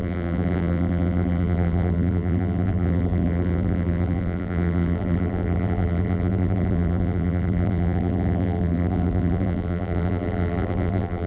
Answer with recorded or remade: remade